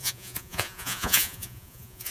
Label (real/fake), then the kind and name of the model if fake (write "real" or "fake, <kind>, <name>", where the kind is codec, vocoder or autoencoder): fake, vocoder, Vocos